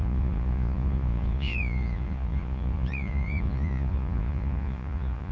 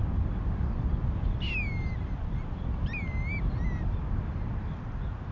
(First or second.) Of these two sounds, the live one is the second